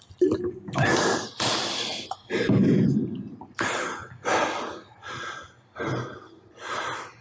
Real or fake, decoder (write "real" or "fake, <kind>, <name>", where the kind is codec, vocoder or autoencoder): fake, vocoder, BigVGAN v2